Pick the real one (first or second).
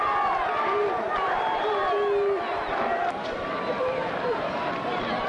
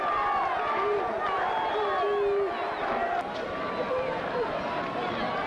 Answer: second